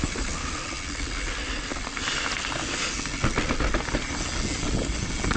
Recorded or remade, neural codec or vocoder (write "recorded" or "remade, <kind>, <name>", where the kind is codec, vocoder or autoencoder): recorded